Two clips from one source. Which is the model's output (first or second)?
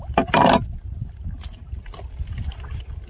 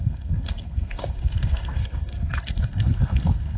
second